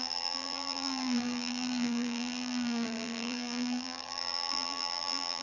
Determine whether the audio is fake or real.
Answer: fake